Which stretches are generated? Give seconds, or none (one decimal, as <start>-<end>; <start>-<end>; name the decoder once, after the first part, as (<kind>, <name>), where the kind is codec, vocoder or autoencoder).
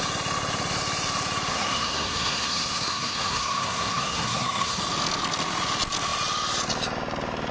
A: 1.5-4.8 (codec, SNAC)